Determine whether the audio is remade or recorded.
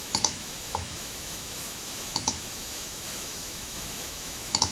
remade